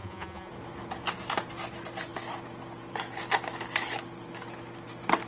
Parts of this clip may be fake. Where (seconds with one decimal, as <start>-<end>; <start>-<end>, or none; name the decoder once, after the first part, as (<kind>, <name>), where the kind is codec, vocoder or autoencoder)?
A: 0.0-0.5 (vocoder, Vocos)